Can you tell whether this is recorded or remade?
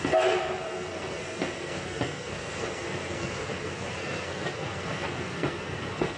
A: remade